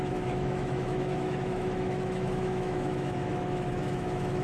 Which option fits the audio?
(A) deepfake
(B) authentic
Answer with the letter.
A